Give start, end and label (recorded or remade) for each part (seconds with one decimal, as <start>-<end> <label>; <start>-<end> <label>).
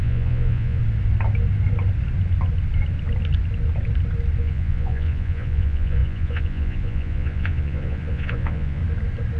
0.0-0.8 remade; 0.8-4.4 recorded; 4.4-8.8 remade; 8.8-9.4 recorded